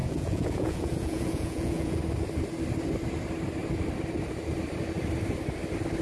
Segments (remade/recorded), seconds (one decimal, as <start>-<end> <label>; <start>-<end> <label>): 0.0-2.0 remade; 2.0-6.0 recorded